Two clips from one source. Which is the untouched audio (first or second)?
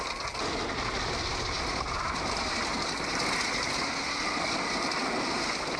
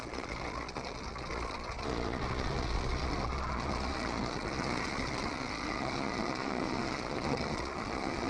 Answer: first